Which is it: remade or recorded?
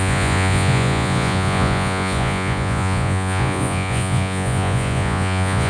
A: remade